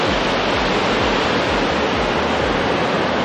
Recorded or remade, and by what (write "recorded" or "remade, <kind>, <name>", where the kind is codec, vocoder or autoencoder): recorded